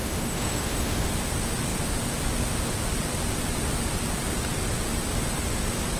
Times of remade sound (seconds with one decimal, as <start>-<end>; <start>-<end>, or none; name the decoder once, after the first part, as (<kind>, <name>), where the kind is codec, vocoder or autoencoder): 0.0-1.1 (autoencoder, DAC-VAE)